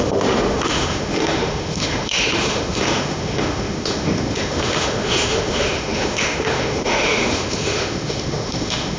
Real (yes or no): no